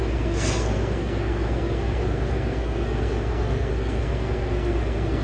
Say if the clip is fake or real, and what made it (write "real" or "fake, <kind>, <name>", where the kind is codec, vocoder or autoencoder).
fake, codec, SNAC